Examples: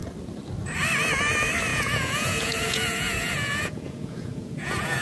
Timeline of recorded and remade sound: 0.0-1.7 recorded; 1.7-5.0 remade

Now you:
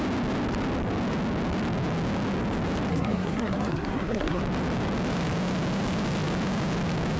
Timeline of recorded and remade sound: 0.0-2.9 recorded; 2.9-4.4 remade; 4.4-7.2 recorded

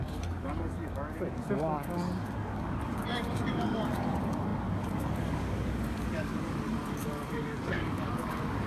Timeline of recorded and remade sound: 0.0-8.7 remade

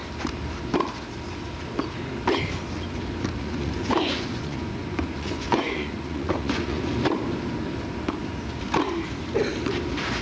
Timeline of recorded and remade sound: 0.0-3.4 recorded; 3.4-6.9 remade; 6.9-10.2 recorded

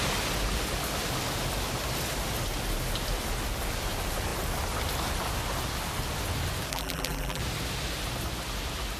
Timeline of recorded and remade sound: 0.0-6.7 recorded; 6.7-7.4 remade; 7.4-9.0 recorded

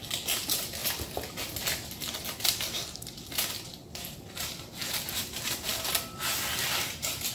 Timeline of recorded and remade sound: 0.0-7.3 recorded

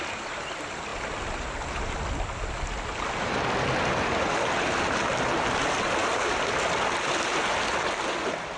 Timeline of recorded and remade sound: 0.0-8.6 recorded